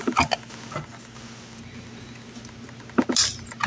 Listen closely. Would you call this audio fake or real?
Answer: real